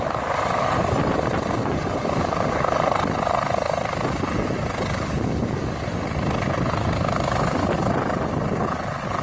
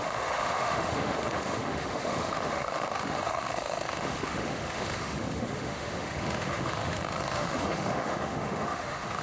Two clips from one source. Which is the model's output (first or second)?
second